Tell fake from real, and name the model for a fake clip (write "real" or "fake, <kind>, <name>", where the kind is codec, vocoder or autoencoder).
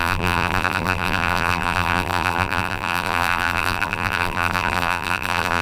fake, vocoder, BigVGAN v2